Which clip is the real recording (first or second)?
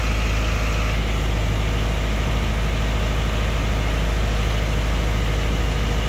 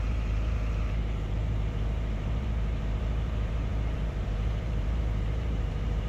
first